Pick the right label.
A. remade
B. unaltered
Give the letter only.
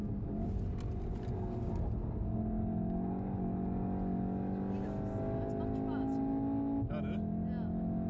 B